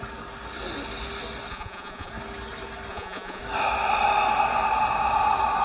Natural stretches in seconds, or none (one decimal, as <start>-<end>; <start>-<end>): 0.0-1.5; 2.1-2.9; 3.4-5.6